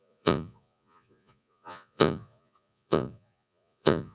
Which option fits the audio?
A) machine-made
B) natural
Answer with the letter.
A